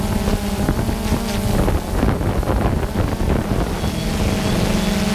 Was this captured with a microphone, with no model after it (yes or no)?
yes